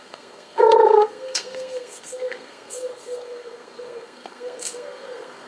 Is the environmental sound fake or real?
fake